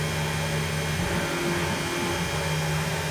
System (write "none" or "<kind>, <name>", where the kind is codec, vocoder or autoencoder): none